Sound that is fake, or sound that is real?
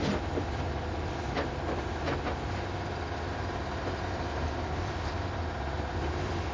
real